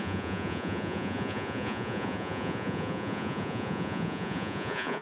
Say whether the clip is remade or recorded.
remade